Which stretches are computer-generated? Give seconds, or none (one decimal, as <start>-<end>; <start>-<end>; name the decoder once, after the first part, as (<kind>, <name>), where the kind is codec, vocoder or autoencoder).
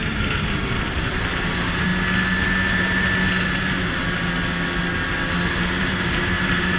0.0-1.9 (vocoder, BigVGAN v2); 2.7-4.0; 5.8-6.8